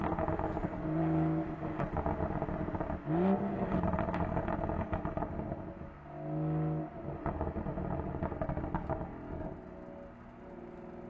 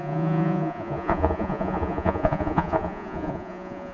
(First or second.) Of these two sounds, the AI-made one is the second